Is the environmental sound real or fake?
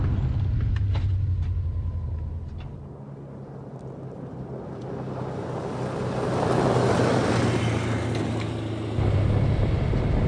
real